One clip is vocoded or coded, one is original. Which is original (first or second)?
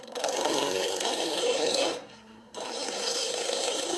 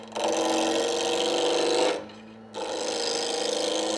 second